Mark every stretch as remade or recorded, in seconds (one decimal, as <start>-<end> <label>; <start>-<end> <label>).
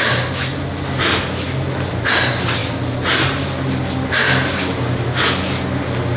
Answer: 0.0-6.2 recorded